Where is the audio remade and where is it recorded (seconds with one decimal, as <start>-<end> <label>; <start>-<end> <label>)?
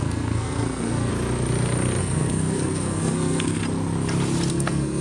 0.0-1.1 remade; 1.1-2.0 recorded; 2.0-3.6 remade; 3.6-4.5 recorded; 4.5-5.0 remade